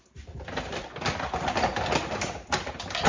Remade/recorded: recorded